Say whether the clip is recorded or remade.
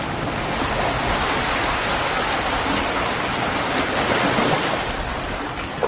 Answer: recorded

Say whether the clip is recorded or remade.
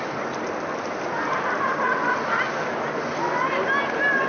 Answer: recorded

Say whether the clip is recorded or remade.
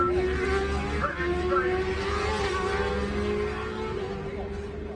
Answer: recorded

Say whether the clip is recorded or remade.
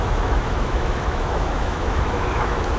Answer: remade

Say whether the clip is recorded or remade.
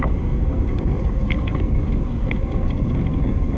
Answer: remade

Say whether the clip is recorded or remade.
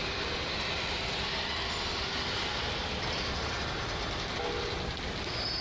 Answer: recorded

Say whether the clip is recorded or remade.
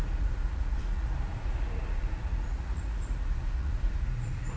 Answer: remade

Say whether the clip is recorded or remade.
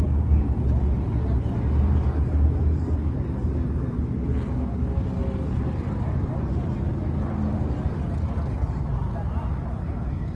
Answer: recorded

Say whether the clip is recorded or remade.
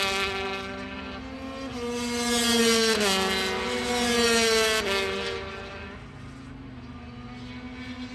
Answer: recorded